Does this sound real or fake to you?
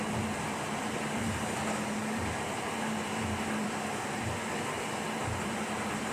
fake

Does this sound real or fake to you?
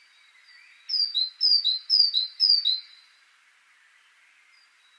real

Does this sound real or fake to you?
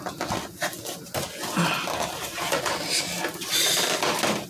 real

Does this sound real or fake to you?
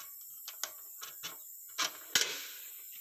real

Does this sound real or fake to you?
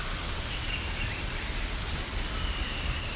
fake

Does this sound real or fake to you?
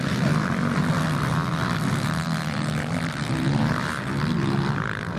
real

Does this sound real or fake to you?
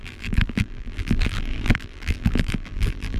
fake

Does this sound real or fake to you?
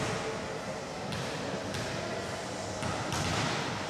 real